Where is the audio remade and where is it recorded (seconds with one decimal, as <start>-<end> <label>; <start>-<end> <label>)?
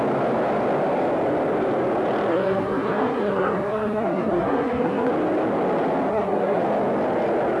0.0-2.3 recorded; 2.3-5.1 remade; 5.1-6.1 recorded; 6.1-6.6 remade; 6.6-7.6 recorded